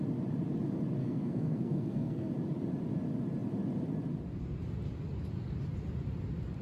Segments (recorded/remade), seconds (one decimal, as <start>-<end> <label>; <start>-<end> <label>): 0.0-1.0 recorded; 1.0-2.3 remade; 2.3-6.6 recorded